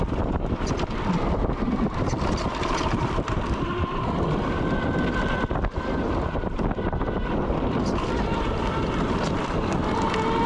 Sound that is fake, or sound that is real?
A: real